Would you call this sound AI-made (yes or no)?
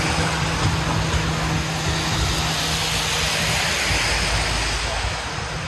no